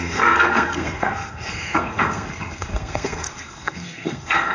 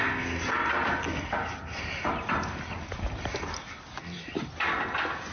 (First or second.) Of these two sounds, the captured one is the second